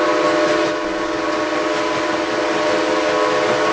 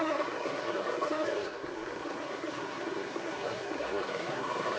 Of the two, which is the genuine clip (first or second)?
first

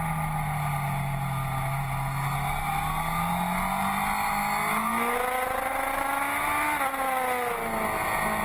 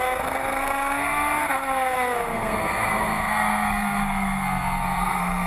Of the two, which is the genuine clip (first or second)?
first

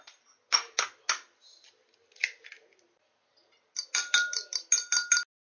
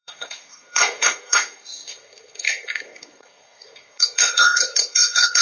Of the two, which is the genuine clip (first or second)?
first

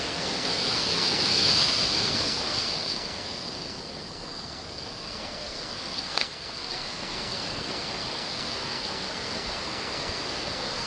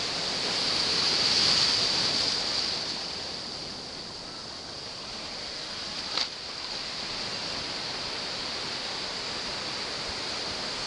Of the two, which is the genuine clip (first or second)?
second